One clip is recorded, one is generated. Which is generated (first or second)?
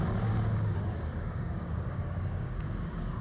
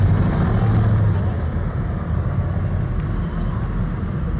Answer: first